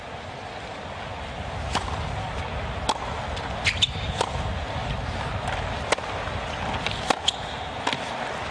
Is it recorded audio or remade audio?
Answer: recorded